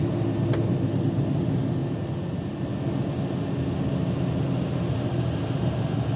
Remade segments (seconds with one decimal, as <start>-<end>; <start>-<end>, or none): none